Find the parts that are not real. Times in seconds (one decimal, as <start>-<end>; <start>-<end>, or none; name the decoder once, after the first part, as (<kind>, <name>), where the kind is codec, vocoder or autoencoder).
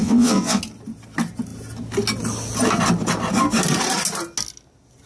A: 0.0-0.6 (vocoder, WaveNeXt)